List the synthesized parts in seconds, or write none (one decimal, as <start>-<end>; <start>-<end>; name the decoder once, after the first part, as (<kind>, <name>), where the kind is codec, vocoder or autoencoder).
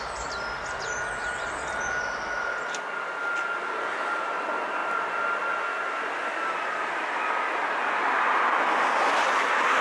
none